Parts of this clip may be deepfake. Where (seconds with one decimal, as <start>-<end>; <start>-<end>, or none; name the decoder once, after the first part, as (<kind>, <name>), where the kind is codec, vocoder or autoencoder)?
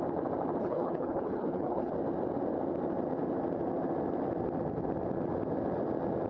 0.6-1.9 (codec, HILCodec)